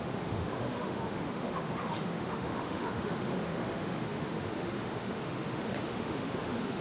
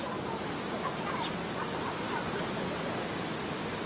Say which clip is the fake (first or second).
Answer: first